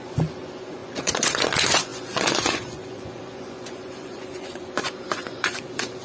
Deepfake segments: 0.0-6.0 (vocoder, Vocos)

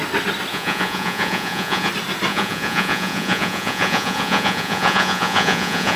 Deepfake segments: 0.5-1.9 (vocoder, Vocos); 2.3-6.0

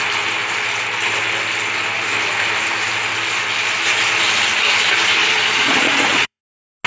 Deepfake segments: 5.2-6.4 (vocoder, Vocos)

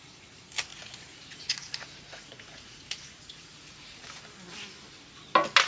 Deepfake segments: 0.7-4.1 (vocoder, Vocos)

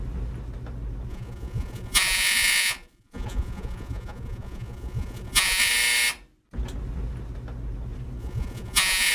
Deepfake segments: 1.1-5.7 (vocoder, Vocos); 8.2-9.1

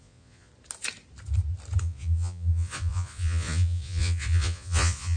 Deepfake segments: 0.0-0.5 (vocoder, Vocos); 1.8-5.2

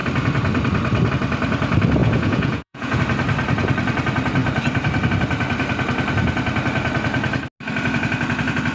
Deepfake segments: 2.0-3.0 (vocoder, Vocos)